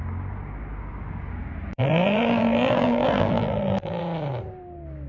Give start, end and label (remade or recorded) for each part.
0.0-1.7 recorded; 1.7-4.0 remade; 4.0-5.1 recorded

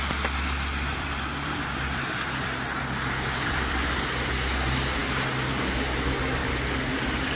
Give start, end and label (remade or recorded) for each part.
0.0-0.9 recorded; 0.9-4.3 remade; 4.3-7.4 recorded